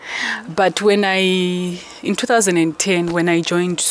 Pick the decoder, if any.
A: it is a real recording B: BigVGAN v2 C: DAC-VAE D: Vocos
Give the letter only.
A